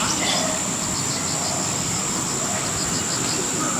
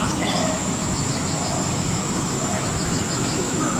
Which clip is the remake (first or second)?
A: second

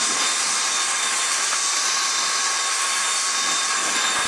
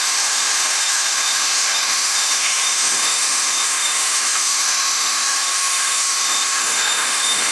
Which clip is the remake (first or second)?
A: second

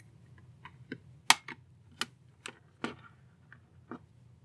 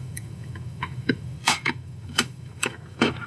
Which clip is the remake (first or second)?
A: second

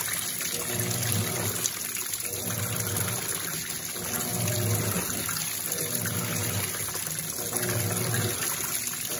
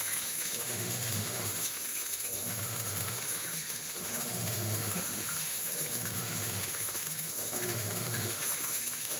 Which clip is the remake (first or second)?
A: second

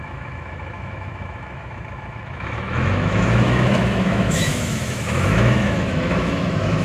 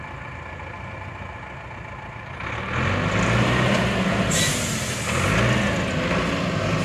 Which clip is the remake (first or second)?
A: first